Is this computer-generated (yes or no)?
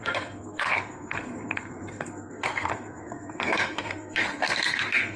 yes